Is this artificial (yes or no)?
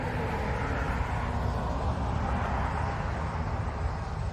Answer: no